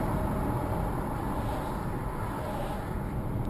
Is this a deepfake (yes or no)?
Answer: no